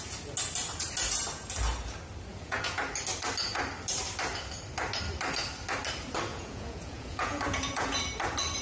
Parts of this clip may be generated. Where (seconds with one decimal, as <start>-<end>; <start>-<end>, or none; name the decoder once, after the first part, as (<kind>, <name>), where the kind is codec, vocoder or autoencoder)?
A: 2.3-2.8 (vocoder, Vocos); 6.3-8.0